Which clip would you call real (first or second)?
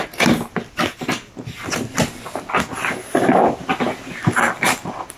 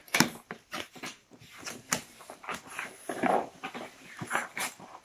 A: first